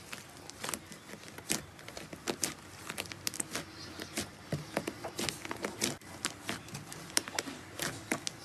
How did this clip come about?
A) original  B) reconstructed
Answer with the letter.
A